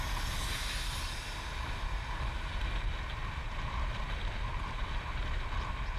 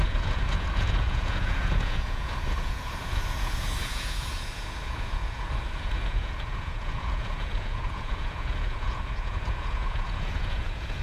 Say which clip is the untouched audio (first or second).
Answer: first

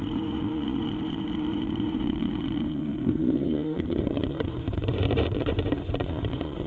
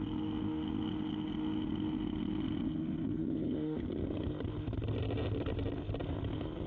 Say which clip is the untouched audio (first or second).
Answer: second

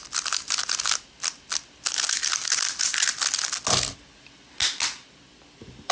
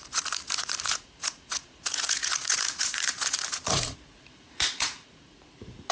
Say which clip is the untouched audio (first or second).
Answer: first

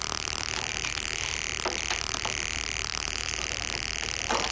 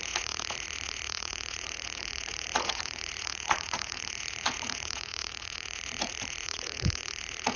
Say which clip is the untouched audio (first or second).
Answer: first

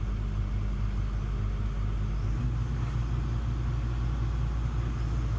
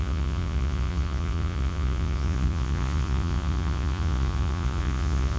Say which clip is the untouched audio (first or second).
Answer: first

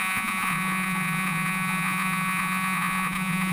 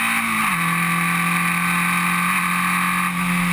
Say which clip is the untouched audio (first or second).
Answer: second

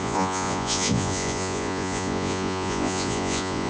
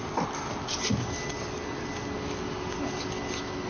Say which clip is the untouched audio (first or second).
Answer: second